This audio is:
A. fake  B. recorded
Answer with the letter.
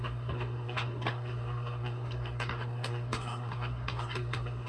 A